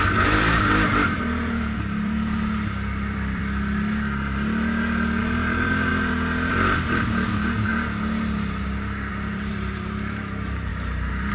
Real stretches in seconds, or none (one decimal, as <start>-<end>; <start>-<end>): 3.4-5.2; 5.9-6.5; 7.7-9.1